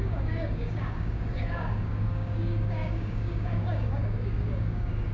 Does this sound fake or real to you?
fake